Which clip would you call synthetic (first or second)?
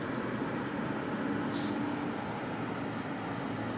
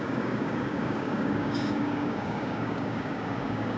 second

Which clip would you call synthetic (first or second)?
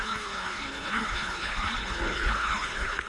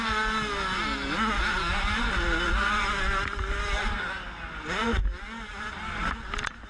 first